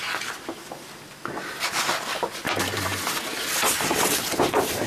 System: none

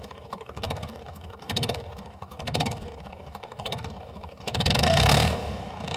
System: codec, DAC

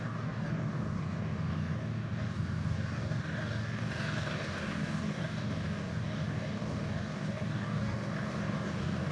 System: codec, DAC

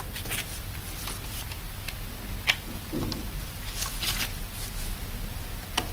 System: none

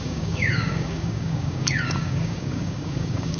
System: codec, DAC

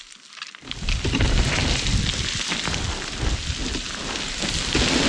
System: none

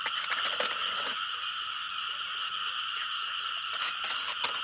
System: none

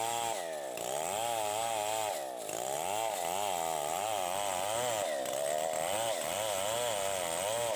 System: none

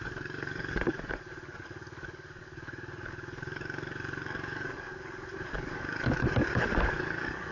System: codec, DAC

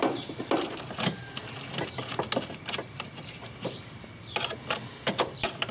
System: none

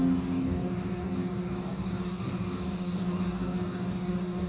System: codec, DAC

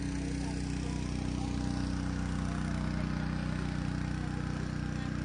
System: none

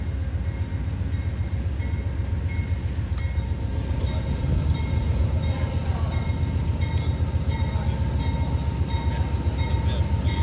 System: none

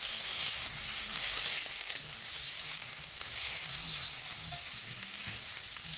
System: codec, DAC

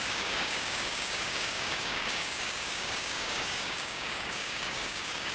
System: codec, DAC